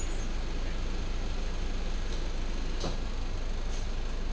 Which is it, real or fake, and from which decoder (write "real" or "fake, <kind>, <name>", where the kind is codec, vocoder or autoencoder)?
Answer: real